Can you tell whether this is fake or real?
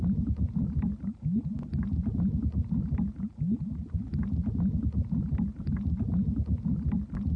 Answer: real